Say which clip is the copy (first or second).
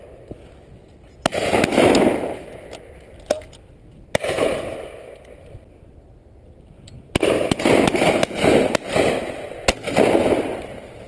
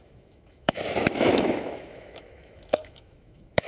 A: second